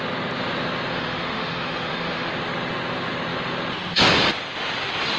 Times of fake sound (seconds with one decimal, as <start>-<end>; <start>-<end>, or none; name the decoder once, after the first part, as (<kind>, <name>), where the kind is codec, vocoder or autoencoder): 0.9-2.3 (autoencoder, DAC-VAE)